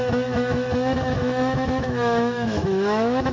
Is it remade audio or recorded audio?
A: remade